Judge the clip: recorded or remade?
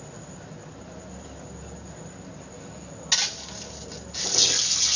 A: recorded